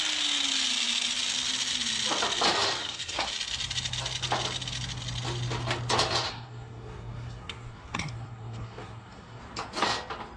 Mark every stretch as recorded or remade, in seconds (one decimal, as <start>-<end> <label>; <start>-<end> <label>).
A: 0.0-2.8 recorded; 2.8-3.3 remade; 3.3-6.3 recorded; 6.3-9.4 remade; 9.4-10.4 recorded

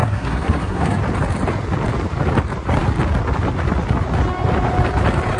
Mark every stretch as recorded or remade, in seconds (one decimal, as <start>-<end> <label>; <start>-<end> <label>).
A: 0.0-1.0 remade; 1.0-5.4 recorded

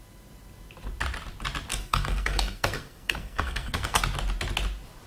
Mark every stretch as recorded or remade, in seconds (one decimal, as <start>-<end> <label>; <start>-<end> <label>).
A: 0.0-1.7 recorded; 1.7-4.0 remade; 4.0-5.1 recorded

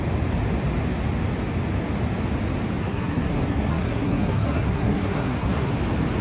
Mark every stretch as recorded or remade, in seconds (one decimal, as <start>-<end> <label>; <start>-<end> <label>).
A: 0.0-2.8 recorded; 2.8-5.7 remade; 5.7-6.2 recorded